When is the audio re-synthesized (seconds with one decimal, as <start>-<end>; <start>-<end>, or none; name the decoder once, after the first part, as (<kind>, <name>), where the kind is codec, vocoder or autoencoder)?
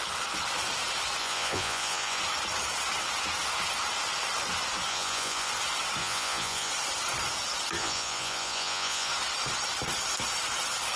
1.2-2.2 (vocoder, Vocos); 4.9-5.5; 6.0-6.7; 7.8-9.1